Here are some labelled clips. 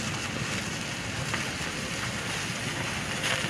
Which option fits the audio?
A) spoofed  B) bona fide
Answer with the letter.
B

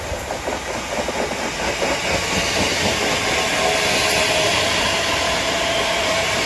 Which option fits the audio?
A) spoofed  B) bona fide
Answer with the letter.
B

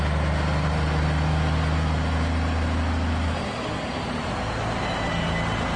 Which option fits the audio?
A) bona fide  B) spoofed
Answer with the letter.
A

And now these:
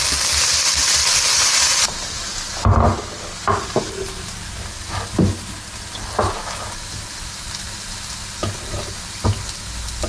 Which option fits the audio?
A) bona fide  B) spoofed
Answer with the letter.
A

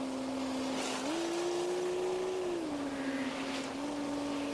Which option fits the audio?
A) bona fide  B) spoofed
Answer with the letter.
A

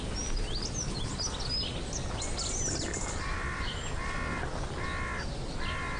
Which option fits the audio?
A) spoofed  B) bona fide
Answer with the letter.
B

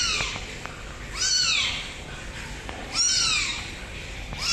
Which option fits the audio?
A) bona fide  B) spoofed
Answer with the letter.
A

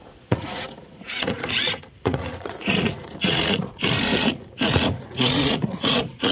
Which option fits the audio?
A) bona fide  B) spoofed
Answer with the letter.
B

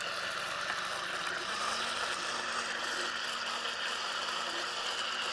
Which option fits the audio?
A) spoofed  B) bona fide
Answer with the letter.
B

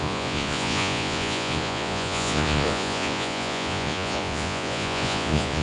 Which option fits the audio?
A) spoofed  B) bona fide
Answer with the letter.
A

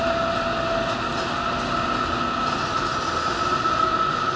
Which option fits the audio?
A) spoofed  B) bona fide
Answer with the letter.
B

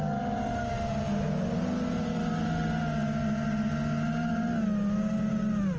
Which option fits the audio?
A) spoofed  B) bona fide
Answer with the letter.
B